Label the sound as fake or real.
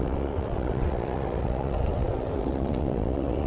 fake